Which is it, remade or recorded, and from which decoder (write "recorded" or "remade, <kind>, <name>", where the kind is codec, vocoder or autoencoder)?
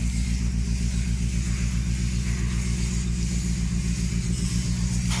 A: recorded